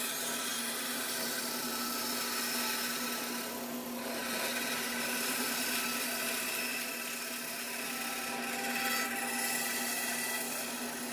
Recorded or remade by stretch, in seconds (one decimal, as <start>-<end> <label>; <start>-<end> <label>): 0.0-0.5 recorded; 0.5-1.7 remade; 1.7-4.2 recorded; 4.2-7.0 remade; 7.0-11.1 recorded